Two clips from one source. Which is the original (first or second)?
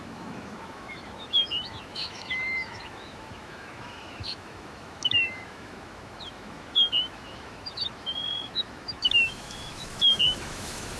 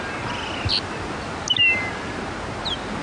second